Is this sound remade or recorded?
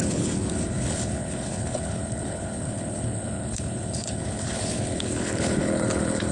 remade